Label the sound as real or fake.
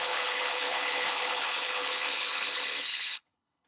fake